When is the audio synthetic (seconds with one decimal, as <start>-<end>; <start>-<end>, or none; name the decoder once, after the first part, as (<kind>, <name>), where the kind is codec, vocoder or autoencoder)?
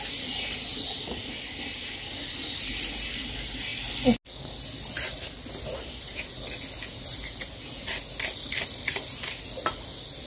none